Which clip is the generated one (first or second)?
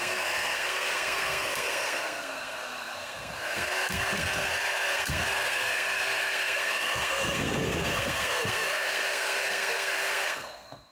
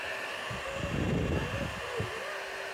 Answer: first